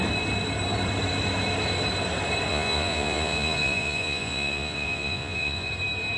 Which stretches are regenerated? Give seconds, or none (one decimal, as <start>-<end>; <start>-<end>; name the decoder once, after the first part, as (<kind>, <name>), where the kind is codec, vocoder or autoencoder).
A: 2.5-5.7 (vocoder, Vocos)